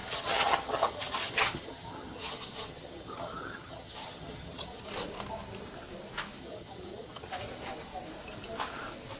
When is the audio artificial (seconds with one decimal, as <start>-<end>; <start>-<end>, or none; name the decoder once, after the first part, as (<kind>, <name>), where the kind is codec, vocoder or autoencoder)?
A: 0.0-4.9 (vocoder, HiFi-GAN); 6.4-7.3